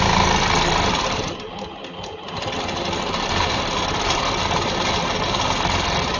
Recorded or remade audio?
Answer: recorded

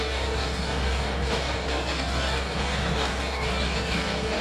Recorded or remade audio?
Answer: remade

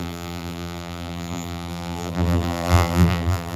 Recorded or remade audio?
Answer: remade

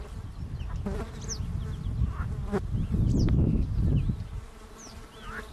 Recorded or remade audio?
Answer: recorded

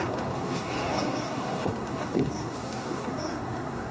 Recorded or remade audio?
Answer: remade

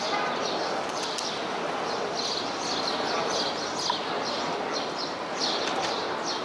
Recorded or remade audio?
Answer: recorded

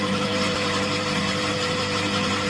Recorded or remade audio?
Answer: remade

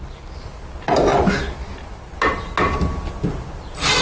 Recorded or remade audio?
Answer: recorded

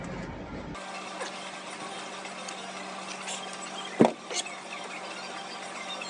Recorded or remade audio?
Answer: recorded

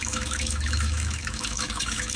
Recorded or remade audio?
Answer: remade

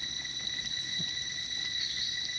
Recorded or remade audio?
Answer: recorded